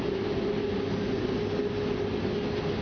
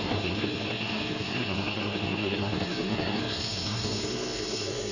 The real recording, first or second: first